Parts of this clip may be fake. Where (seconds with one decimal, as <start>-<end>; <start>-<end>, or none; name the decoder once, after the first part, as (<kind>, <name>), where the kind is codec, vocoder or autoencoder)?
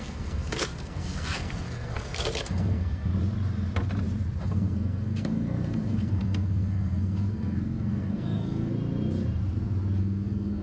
0.0-3.1 (codec, SNAC); 4.4-8.7; 10.0-10.6